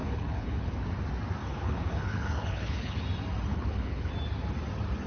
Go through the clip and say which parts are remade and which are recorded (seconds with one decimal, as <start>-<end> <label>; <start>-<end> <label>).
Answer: 0.0-0.7 remade; 0.7-1.4 recorded; 1.4-3.0 remade; 3.0-3.5 recorded; 3.5-4.1 remade; 4.1-5.1 recorded